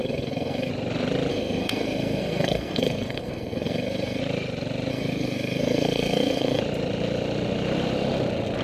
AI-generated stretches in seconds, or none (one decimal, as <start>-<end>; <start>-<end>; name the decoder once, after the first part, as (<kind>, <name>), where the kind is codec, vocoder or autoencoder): 0.0-0.7 (codec, SNAC); 1.3-4.2; 4.9-6.6